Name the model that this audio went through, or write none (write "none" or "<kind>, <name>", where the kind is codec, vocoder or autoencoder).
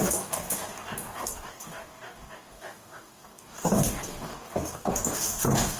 codec, DAC